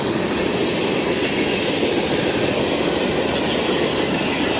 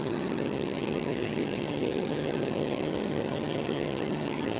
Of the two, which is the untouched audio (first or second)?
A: first